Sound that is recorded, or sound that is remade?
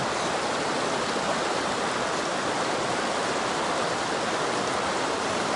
recorded